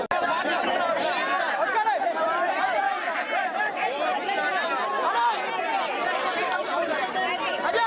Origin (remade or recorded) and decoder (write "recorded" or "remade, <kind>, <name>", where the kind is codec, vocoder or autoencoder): recorded